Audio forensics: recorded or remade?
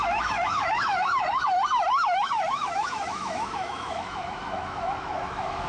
remade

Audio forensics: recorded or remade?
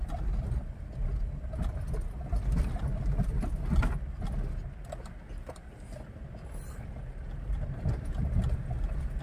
recorded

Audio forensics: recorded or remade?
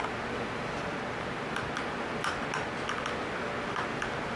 recorded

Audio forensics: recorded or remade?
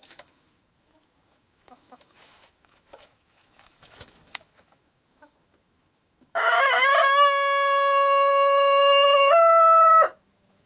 remade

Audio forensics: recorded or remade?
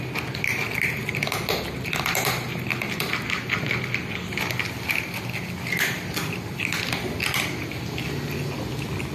recorded